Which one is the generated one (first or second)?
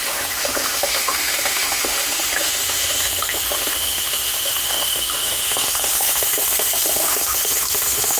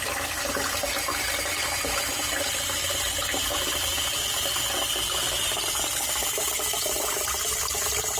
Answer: first